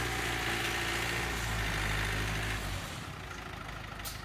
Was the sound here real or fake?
real